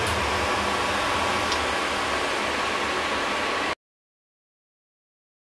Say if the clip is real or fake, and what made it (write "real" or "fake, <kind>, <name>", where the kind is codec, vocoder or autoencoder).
real